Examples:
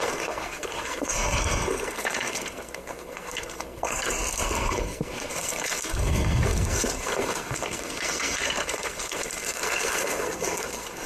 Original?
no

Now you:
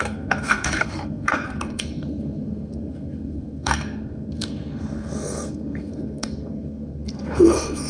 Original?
no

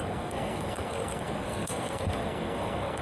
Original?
no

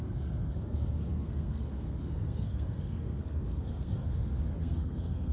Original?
no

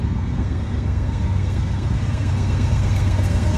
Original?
no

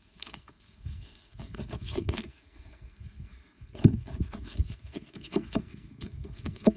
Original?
no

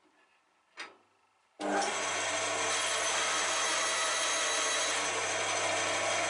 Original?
yes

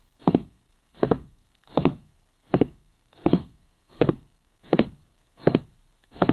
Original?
no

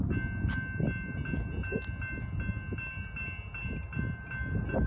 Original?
yes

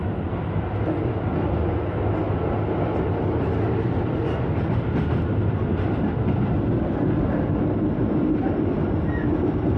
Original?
yes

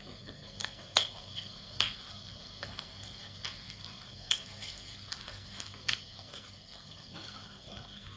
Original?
no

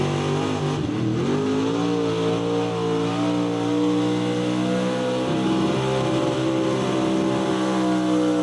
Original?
yes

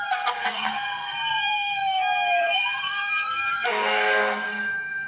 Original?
no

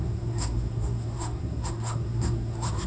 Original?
no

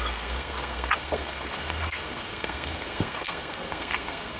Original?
no